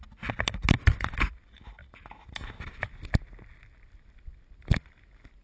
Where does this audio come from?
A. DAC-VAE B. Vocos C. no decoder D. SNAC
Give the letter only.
C